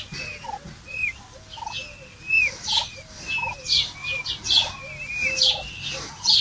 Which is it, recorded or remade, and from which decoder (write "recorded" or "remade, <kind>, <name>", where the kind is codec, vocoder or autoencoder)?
recorded